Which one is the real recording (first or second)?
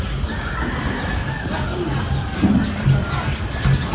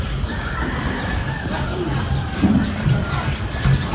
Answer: first